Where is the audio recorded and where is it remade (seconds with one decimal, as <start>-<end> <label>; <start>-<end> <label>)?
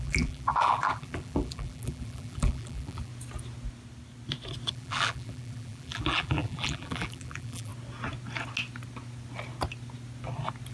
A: 0.0-3.1 remade; 3.1-4.7 recorded; 4.7-7.7 remade; 7.7-10.7 recorded